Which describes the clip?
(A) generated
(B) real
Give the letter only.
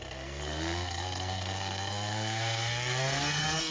A